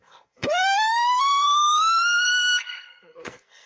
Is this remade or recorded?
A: remade